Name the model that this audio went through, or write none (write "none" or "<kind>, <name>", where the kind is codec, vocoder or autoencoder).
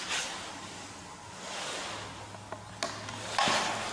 none